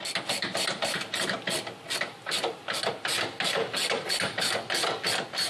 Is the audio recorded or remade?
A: remade